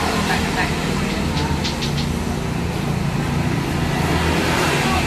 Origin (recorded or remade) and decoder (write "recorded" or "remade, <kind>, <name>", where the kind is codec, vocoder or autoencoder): recorded